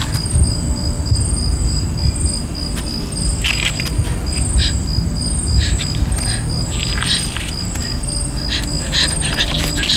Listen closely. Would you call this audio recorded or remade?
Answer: recorded